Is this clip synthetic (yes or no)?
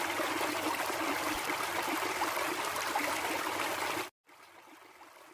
no